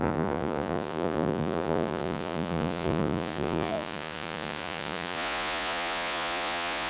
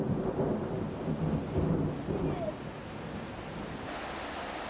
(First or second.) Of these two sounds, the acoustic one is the second